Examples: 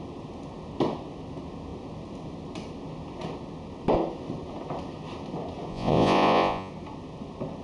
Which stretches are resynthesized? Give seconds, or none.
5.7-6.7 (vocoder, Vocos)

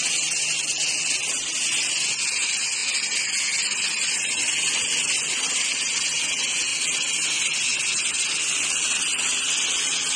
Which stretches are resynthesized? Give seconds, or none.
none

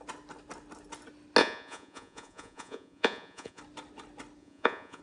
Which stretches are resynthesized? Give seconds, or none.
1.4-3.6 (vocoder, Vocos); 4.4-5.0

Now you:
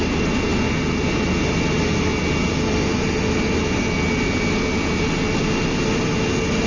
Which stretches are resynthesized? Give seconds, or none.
none